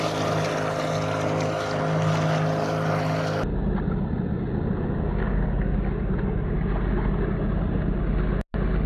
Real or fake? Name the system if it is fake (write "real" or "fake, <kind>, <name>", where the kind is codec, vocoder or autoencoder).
real